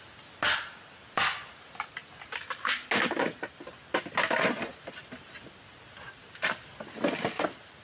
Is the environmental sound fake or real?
real